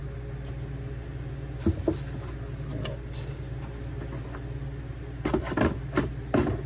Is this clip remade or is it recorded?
recorded